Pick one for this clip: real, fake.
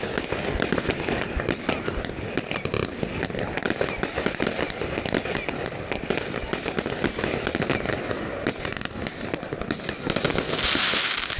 real